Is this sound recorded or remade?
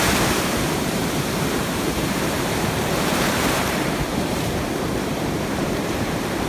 remade